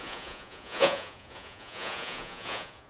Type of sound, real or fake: fake